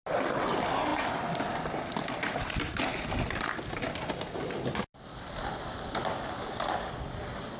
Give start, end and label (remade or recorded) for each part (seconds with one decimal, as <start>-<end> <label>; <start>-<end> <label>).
0.0-7.6 recorded